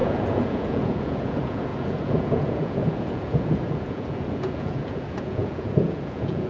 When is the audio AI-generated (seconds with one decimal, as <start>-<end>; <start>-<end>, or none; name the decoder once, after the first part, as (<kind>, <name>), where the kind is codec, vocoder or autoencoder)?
0.0-6.5 (vocoder, Vocos)